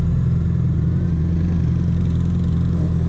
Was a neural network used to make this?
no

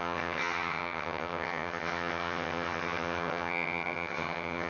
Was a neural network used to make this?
yes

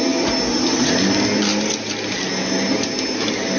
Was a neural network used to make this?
no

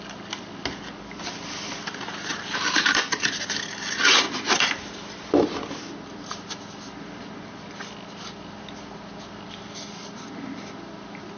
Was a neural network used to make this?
no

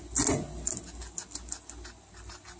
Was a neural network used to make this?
no